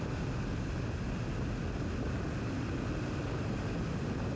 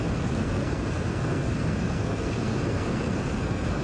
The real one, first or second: first